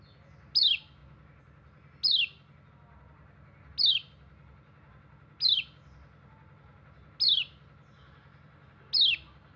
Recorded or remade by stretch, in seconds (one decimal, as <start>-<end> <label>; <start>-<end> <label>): 0.0-9.6 recorded